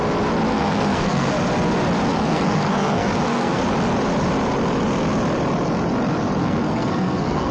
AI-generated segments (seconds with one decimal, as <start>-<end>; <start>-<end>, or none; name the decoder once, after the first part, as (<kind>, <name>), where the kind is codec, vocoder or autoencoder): 0.5-1.3 (codec, SNAC); 2.1-3.6; 6.4-7.5